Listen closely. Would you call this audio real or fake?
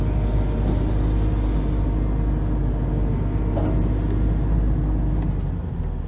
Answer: real